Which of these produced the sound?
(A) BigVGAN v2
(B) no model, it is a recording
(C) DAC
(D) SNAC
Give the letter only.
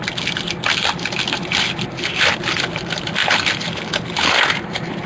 B